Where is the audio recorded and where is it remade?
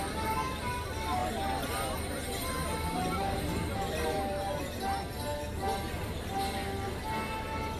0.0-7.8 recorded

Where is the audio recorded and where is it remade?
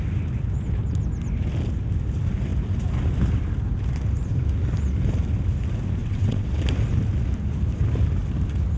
0.0-6.0 recorded; 6.0-6.6 remade; 6.6-8.8 recorded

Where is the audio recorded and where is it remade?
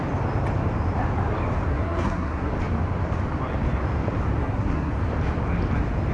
0.0-1.7 recorded; 1.7-2.5 remade; 2.5-4.4 recorded; 4.4-4.9 remade; 4.9-6.1 recorded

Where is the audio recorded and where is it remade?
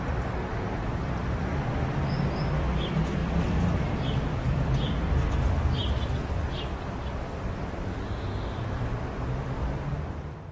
0.0-3.2 remade; 3.2-4.4 recorded; 4.4-10.5 remade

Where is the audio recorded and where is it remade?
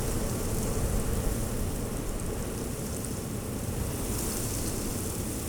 0.0-1.4 recorded; 1.4-3.8 remade; 3.8-5.5 recorded